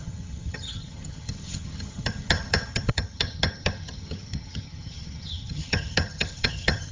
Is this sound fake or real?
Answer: fake